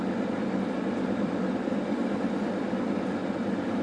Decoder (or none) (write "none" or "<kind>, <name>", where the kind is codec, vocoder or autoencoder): vocoder, BigVGAN v2